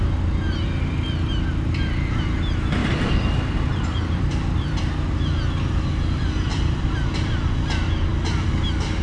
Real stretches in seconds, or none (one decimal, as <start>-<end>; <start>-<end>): 0.0-2.8; 4.9-6.5; 7.3-9.0